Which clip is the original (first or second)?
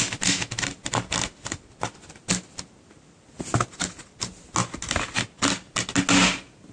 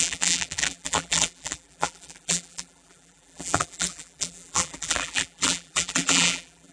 first